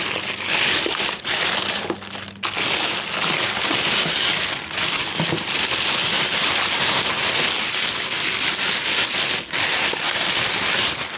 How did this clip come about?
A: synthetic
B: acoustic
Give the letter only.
B